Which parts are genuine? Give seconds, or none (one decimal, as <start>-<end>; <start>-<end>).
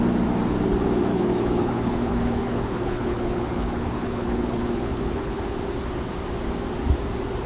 0.0-1.1; 5.6-7.5